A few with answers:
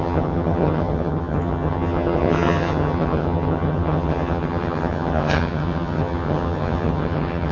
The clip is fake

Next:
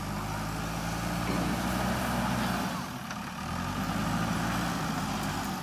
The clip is real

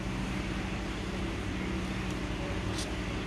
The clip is real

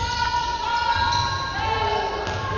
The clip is real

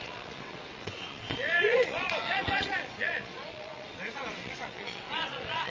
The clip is fake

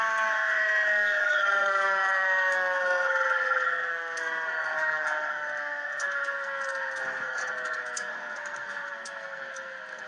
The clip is fake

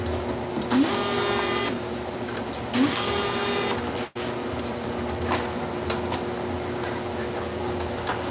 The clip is real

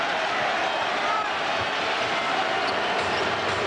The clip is real